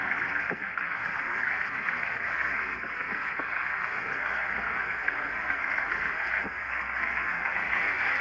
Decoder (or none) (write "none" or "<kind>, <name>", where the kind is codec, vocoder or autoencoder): codec, SNAC